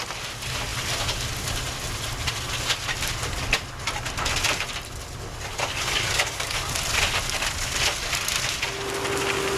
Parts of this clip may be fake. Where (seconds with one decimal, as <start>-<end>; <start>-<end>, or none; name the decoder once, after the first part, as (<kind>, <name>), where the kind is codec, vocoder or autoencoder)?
5.5-6.7 (codec, DAC)